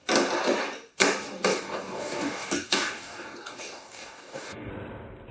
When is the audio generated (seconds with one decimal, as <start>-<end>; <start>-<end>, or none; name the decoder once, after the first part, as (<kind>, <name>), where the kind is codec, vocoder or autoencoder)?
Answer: 1.5-4.7 (codec, DAC)